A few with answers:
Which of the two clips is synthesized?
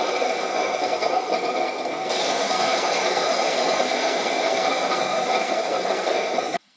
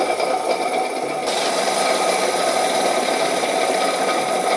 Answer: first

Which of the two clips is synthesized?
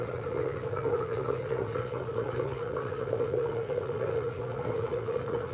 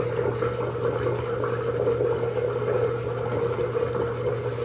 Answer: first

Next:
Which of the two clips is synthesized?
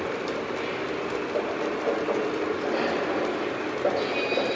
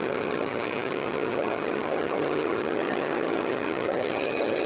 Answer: second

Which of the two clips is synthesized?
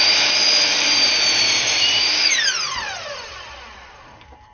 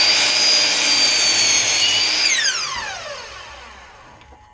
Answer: first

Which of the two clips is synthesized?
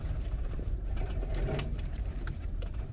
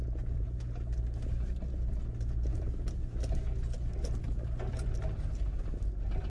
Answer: first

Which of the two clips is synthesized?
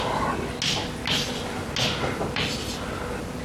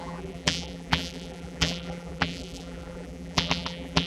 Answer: second